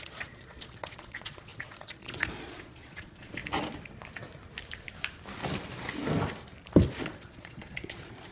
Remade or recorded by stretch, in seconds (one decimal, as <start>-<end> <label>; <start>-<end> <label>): 0.0-3.4 remade; 3.4-7.0 recorded; 7.0-8.3 remade